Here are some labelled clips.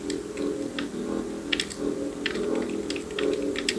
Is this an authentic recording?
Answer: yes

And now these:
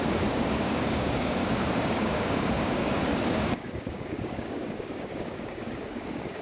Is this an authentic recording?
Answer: no